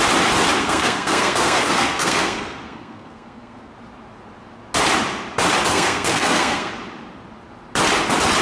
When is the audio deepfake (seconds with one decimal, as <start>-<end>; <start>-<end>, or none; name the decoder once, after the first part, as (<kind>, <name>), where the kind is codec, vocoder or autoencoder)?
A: 0.6-3.7 (codec, SNAC); 5.7-6.7